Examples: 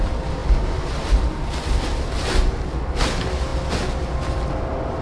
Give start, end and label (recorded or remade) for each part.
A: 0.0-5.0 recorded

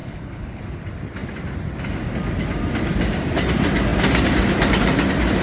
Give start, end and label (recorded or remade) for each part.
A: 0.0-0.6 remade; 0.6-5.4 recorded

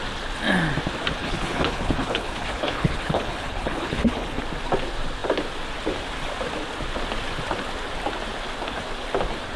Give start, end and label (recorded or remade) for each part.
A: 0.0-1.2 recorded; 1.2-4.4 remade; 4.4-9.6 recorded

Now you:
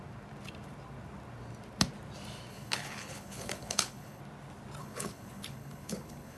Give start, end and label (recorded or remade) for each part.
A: 0.0-2.5 recorded; 2.5-4.2 remade; 4.2-4.8 recorded; 4.8-6.4 remade